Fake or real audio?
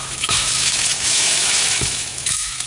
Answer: fake